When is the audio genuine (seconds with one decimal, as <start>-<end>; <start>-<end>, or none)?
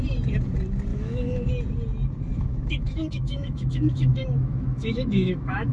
0.0-0.9; 1.5-2.3